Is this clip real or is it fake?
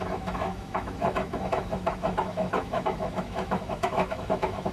fake